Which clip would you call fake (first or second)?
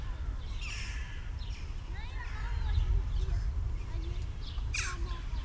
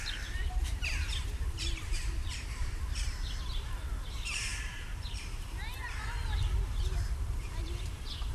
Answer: second